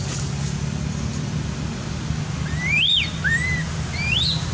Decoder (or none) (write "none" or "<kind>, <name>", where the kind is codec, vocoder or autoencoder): none